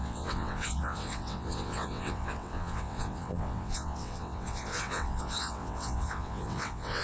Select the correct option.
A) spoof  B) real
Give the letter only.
A